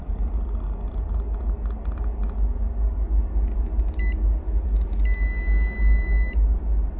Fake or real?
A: real